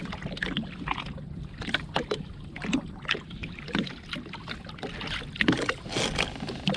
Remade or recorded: recorded